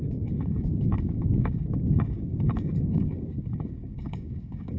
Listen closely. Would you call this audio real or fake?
fake